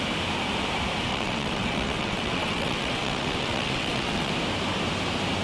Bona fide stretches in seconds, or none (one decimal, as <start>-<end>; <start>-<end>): 0.0-1.1; 4.3-5.4